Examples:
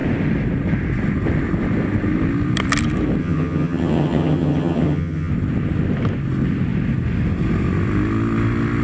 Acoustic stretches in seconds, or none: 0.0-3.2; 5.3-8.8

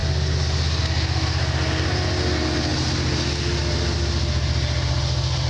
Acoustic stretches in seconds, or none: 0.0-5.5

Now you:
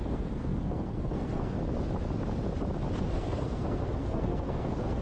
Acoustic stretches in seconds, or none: 1.6-3.0

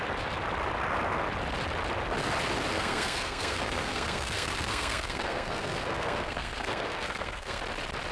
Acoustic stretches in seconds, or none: 0.0-2.7; 7.6-8.1